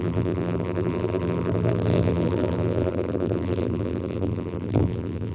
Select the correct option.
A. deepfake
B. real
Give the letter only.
A